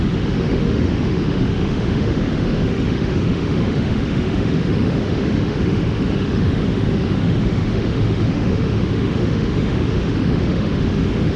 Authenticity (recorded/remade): remade